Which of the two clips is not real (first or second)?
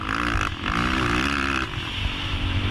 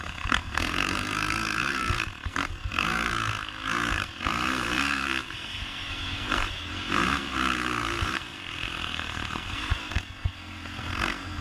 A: second